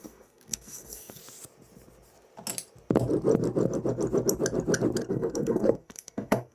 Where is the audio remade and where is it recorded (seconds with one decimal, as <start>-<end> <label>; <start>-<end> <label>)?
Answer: 0.0-1.2 remade; 1.2-5.1 recorded; 5.1-6.5 remade